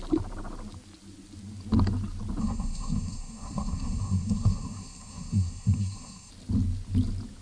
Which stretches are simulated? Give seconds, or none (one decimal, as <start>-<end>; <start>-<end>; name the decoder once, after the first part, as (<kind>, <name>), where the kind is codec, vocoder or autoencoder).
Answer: 2.4-6.3 (codec, SNAC)

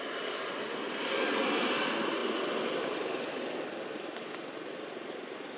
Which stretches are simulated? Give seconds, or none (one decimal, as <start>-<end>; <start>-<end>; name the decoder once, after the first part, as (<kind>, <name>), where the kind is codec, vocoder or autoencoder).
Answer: none

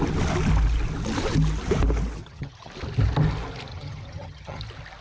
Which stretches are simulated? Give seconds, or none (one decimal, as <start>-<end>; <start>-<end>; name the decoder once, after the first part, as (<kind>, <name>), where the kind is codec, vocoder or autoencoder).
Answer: 2.2-2.7 (vocoder, HiFi-GAN); 3.7-4.6

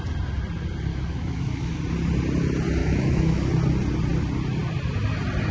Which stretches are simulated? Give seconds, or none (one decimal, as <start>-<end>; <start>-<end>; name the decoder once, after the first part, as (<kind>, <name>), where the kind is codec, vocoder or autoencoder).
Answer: 0.9-1.8 (autoencoder, DAC-VAE); 2.8-3.5

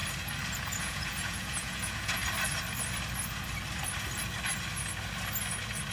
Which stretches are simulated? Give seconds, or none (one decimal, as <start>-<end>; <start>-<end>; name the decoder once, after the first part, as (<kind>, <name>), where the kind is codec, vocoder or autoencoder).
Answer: 0.8-2.2 (vocoder, Vocos)